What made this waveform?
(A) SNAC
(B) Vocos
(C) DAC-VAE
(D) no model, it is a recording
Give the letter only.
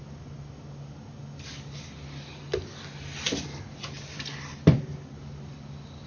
D